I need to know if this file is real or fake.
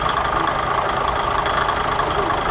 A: real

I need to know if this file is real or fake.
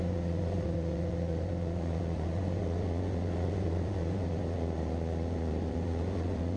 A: fake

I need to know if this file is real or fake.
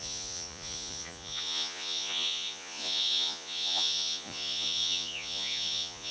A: fake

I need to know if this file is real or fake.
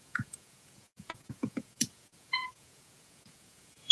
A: fake